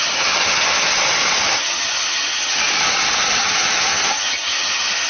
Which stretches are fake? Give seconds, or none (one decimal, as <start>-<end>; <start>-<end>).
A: 0.0-0.9; 1.5-2.6; 3.4-5.1